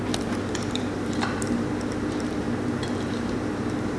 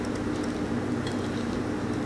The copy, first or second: first